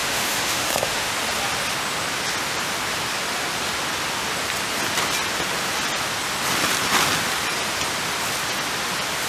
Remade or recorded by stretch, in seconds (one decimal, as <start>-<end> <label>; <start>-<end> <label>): 0.0-1.1 remade; 1.1-9.3 recorded